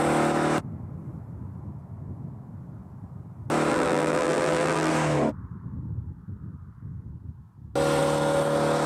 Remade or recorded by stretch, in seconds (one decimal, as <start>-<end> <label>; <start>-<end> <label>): 0.0-3.7 recorded; 3.7-4.9 remade; 4.9-8.9 recorded